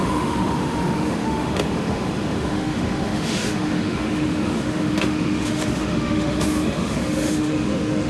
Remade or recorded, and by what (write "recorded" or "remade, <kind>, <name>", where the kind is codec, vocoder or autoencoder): remade, autoencoder, DAC-VAE